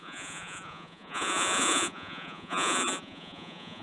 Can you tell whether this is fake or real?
fake